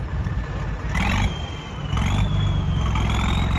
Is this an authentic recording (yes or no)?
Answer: yes